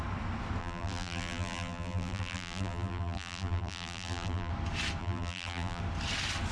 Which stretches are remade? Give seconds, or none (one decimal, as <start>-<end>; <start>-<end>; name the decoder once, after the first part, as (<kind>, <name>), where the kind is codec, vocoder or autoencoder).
0.6-4.5 (vocoder, BigVGAN v2); 5.0-5.8